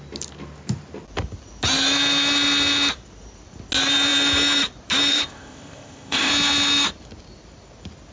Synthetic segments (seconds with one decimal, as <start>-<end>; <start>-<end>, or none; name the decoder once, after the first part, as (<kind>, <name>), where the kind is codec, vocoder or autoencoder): 5.1-6.3 (codec, ZipCodec)